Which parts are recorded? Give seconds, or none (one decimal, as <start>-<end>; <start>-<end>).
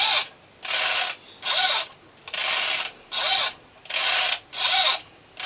0.0-5.5